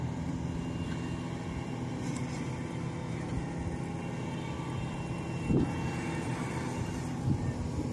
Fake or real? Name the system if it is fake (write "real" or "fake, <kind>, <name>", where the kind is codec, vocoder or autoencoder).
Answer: real